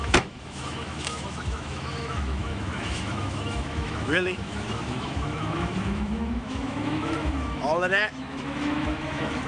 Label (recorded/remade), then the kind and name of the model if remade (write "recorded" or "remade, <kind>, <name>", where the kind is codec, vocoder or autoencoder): remade, autoencoder, DAC-VAE